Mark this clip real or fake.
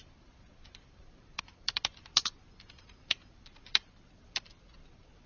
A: fake